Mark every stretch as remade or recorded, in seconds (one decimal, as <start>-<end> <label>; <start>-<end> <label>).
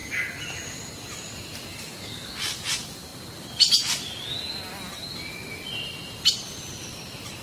0.0-1.7 recorded; 1.7-2.3 remade; 2.3-7.4 recorded